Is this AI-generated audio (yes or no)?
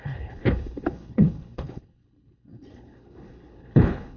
yes